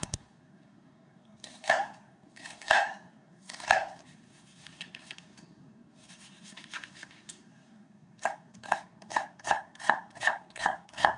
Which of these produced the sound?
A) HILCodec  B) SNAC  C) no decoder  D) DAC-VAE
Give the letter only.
B